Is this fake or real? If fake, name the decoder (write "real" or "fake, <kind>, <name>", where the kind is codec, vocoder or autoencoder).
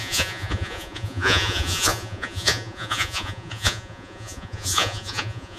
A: fake, vocoder, Vocos